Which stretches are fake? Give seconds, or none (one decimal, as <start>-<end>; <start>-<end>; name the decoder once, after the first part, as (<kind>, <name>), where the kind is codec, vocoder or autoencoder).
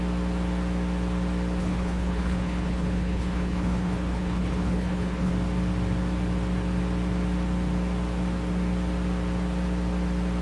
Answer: 1.6-5.3 (codec, HILCodec)